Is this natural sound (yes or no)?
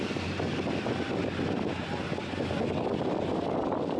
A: yes